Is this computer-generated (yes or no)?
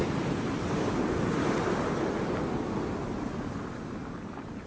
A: no